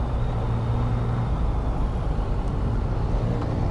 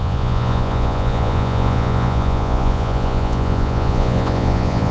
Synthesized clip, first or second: second